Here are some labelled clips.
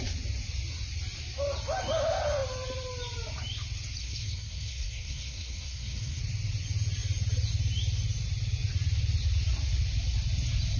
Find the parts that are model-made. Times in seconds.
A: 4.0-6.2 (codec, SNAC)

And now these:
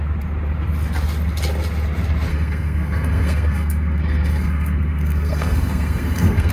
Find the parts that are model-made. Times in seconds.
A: 2.3-6.5 (codec, SNAC)